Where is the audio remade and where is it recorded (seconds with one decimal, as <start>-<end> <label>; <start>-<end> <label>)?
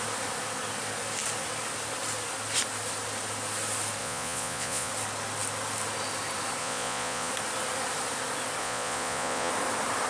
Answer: 0.0-4.0 recorded; 4.0-4.9 remade; 4.9-6.6 recorded; 6.6-7.3 remade; 7.3-8.6 recorded; 8.6-9.5 remade; 9.5-10.1 recorded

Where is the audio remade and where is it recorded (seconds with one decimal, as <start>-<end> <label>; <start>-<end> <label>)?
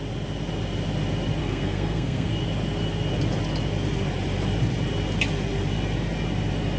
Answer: 0.0-1.4 recorded; 1.4-2.3 remade; 2.3-6.8 recorded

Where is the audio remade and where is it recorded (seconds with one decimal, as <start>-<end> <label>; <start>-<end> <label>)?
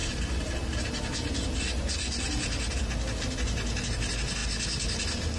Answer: 0.0-5.4 recorded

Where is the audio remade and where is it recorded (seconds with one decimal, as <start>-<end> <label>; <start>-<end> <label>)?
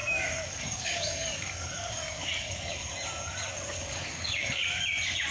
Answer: 0.0-2.9 remade; 2.9-3.5 recorded; 3.5-4.5 remade; 4.5-5.3 recorded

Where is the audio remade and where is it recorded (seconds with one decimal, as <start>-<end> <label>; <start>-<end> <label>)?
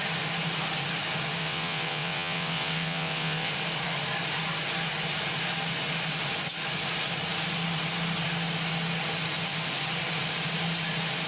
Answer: 0.0-1.4 recorded; 1.4-3.5 remade; 3.5-11.3 recorded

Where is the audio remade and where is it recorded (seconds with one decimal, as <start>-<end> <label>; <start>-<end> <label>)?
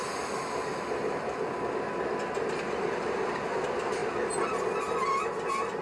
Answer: 0.0-5.8 recorded